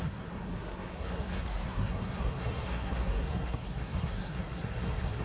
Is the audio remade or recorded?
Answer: remade